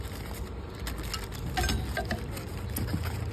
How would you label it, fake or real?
real